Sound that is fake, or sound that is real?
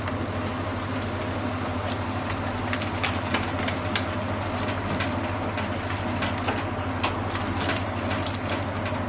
real